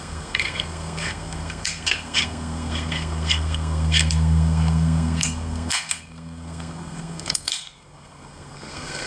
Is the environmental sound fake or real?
fake